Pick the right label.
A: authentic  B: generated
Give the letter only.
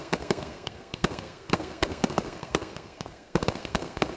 B